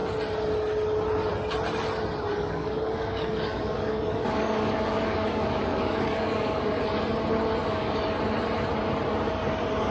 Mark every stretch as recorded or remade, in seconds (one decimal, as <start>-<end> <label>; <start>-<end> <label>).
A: 0.0-2.3 recorded; 2.3-6.8 remade; 6.8-7.6 recorded; 7.6-8.2 remade; 8.2-9.9 recorded